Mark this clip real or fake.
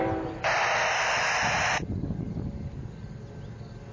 real